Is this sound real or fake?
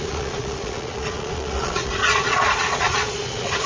fake